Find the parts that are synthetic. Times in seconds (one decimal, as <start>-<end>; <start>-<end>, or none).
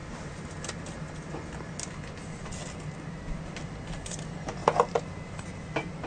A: none